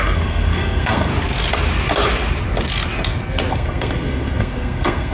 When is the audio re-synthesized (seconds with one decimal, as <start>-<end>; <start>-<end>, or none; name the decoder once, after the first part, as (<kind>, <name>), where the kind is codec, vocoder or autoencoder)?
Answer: 0.0-1.1 (codec, SNAC); 3.5-5.1